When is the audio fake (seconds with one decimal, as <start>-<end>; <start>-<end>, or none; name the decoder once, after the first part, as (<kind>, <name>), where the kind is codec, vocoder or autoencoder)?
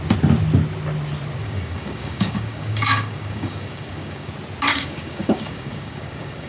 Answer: 1.4-4.3 (codec, DAC); 4.7-6.5